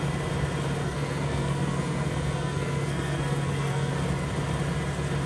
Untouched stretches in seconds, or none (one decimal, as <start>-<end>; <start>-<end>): 0.0-0.8; 3.9-5.3